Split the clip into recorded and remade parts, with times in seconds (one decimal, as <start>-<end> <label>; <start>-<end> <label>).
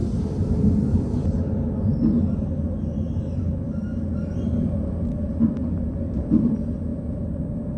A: 0.0-7.8 recorded